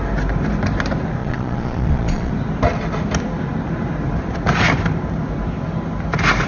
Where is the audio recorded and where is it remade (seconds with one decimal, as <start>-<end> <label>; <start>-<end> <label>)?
0.0-1.2 recorded; 1.2-2.3 remade; 2.3-6.5 recorded